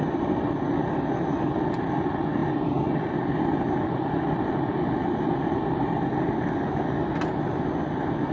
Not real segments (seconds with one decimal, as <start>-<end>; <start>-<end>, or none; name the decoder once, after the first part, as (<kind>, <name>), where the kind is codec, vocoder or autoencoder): none